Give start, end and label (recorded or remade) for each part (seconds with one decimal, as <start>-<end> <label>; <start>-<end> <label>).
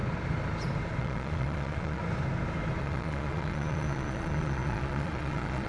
0.0-1.0 recorded; 1.0-2.0 remade; 2.0-2.8 recorded; 2.8-5.7 remade